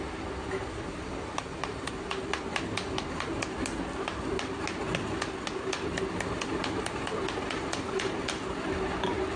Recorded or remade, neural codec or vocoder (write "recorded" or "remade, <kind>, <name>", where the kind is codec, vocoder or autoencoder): recorded